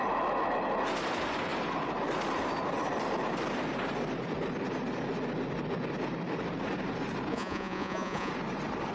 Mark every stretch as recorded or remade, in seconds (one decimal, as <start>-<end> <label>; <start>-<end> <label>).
0.0-7.3 recorded; 7.3-8.3 remade; 8.3-8.9 recorded